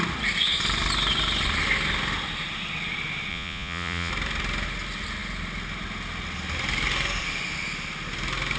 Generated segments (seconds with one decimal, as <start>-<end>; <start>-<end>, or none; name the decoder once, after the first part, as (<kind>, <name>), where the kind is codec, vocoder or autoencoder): 3.3-4.1 (vocoder, Vocos)